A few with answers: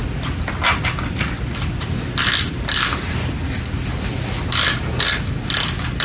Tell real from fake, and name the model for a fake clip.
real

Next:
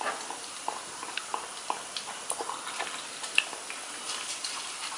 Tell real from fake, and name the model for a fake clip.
real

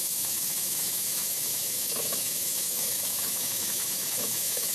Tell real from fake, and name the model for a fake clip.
fake, autoencoder, DAC-VAE